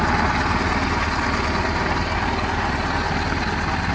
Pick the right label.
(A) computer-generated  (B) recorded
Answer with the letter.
B